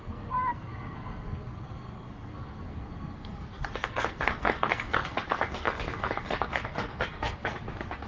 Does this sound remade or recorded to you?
remade